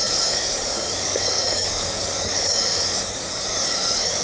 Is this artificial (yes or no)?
yes